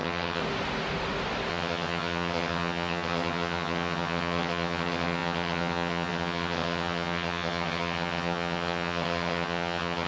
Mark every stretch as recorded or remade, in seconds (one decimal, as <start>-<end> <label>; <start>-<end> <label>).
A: 0.0-0.4 remade; 0.4-1.5 recorded; 1.5-10.1 remade